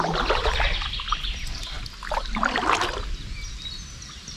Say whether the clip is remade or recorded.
recorded